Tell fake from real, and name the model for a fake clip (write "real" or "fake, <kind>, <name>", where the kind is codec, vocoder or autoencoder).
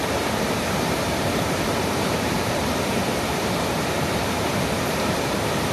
fake, vocoder, BigVGAN v2